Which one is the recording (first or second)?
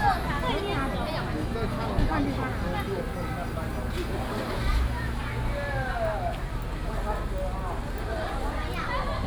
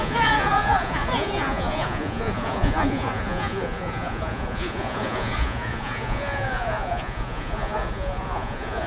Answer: first